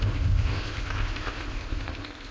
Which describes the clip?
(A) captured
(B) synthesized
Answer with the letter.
B